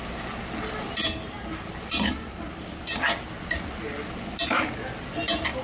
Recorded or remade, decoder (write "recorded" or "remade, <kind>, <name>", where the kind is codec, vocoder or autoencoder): recorded